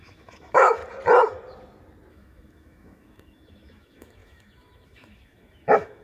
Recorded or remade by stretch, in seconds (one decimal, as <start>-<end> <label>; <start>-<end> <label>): 0.0-0.8 remade; 0.8-2.1 recorded; 2.1-6.0 remade

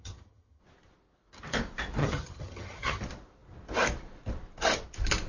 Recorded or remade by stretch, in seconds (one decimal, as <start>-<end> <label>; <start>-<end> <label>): 0.0-0.6 remade; 0.6-2.0 recorded; 2.0-3.0 remade; 3.0-5.3 recorded

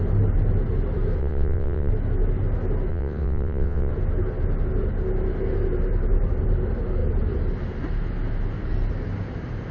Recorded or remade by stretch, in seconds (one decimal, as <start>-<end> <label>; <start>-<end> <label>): 0.0-1.2 recorded; 1.2-1.9 remade; 1.9-2.9 recorded; 2.9-3.9 remade; 3.9-9.7 recorded

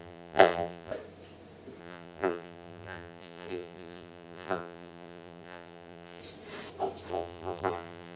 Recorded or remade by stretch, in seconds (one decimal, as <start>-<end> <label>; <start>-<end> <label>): 0.0-0.9 remade; 0.9-1.8 recorded; 1.8-6.2 remade; 6.2-7.1 recorded; 7.1-8.2 remade

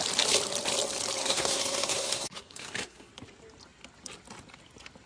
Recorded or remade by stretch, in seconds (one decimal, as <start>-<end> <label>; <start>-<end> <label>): 0.0-1.2 recorded; 1.2-3.1 remade; 3.1-5.1 recorded

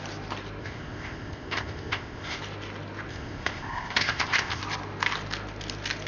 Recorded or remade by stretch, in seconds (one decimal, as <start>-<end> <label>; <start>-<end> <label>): 0.0-0.6 recorded; 0.6-2.4 remade; 2.4-3.1 recorded; 3.1-4.6 remade; 4.6-6.1 recorded

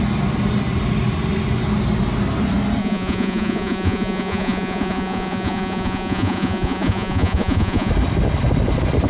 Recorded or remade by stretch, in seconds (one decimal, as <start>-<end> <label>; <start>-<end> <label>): 0.0-2.8 recorded; 2.8-7.9 remade; 7.9-9.1 recorded